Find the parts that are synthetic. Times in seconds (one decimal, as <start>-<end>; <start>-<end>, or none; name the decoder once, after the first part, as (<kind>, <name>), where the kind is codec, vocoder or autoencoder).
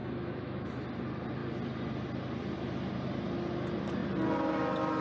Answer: 0.0-0.8 (autoencoder, DAC-VAE)